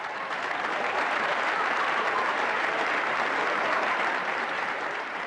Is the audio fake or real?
fake